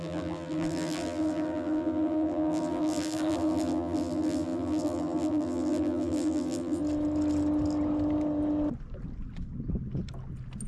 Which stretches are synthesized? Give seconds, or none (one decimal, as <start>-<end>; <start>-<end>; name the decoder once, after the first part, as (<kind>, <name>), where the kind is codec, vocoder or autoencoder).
0.0-6.8 (vocoder, BigVGAN v2)

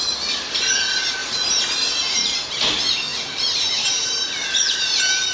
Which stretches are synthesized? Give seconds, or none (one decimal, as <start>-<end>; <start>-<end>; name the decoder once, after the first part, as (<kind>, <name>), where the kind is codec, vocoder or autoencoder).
1.2-2.6 (vocoder, BigVGAN v2); 3.1-4.8